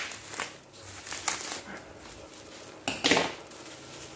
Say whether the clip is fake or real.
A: real